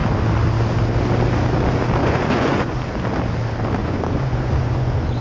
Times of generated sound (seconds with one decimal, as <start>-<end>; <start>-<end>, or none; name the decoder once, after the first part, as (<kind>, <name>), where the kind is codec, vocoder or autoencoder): 2.0-2.8 (vocoder, Vocos); 3.8-5.2